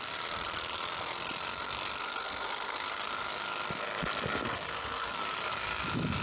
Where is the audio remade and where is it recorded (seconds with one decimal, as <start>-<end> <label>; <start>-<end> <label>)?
0.0-2.0 recorded; 2.0-3.1 remade; 3.1-4.4 recorded; 4.4-5.1 remade; 5.1-6.2 recorded